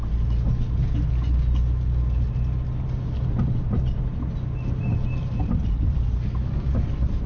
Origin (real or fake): real